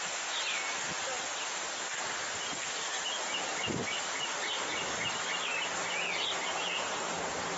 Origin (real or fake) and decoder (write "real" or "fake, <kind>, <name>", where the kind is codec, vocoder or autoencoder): real